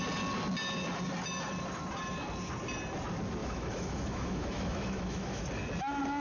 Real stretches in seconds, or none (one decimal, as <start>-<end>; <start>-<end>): 0.0-3.4; 5.4-6.2